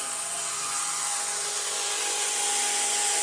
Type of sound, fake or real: fake